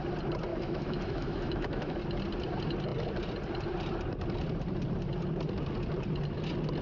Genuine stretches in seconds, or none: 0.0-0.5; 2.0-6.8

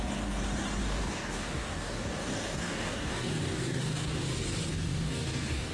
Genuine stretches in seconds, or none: 0.0-0.8; 4.2-4.7

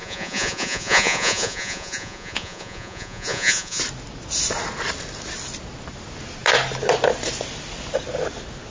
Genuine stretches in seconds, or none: 3.8-8.7

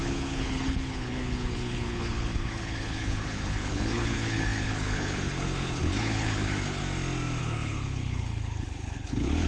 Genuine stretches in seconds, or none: 6.8-7.4

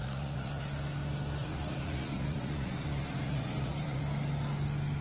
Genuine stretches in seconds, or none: 0.6-1.4; 4.0-5.0

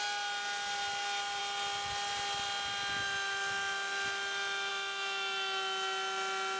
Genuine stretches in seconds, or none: 0.0-6.6